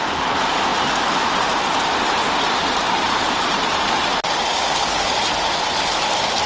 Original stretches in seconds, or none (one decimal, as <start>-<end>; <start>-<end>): 0.0-4.5; 5.1-6.5